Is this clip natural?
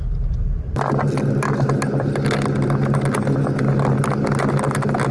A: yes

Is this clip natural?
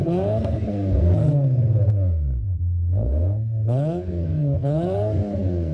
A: no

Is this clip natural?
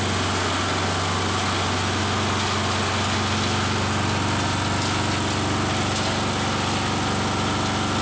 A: yes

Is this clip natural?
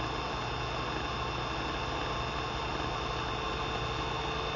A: yes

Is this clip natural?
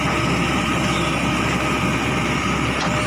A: yes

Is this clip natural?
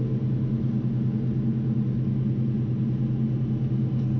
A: yes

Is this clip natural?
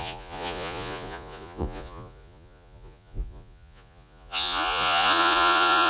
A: no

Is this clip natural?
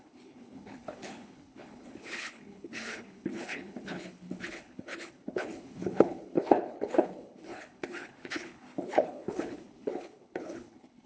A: no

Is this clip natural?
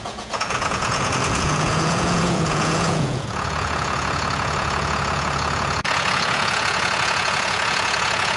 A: no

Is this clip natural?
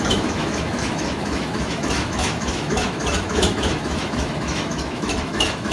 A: no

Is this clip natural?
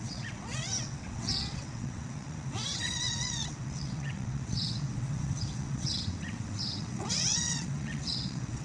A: no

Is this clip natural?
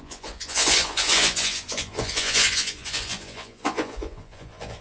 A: no